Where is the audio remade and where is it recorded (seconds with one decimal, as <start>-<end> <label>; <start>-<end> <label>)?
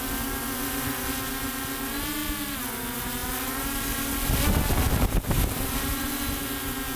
0.0-7.0 recorded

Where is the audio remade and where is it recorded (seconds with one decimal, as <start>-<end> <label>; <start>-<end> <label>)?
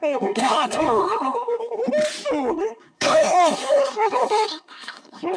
0.0-1.8 remade; 1.8-2.5 recorded; 2.5-5.4 remade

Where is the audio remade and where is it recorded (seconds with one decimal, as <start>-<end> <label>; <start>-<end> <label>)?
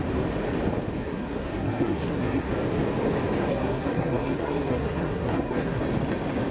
0.0-1.0 recorded; 1.0-2.5 remade; 2.5-3.5 recorded; 3.5-5.8 remade; 5.8-6.5 recorded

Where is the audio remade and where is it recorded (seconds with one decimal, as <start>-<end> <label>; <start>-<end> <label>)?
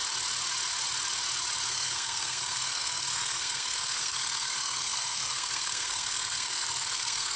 0.0-1.7 recorded; 1.7-7.4 remade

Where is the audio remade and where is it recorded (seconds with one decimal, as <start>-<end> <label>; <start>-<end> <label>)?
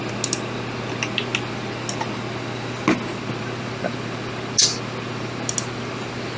0.0-6.4 recorded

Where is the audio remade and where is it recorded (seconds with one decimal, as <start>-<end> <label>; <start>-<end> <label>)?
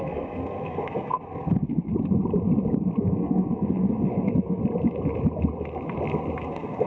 0.0-1.9 remade; 1.9-3.0 recorded; 3.0-4.6 remade; 4.6-6.5 recorded; 6.5-6.9 remade